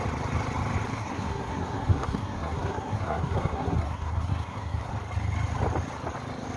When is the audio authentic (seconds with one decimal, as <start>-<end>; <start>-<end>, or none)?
0.0-0.9; 4.9-6.6